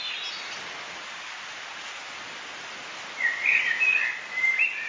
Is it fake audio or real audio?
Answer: real